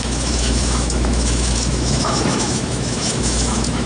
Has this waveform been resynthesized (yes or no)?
yes